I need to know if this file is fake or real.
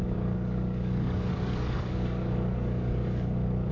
fake